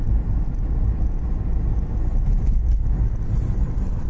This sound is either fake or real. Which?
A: real